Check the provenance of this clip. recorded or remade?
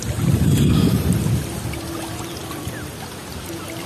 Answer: recorded